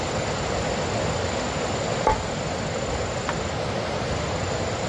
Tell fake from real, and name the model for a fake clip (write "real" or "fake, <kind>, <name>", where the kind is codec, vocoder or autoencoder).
real